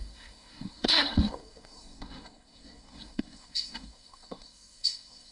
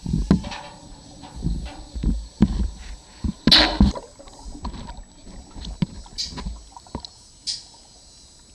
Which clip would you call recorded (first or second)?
second